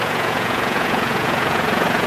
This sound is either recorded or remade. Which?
remade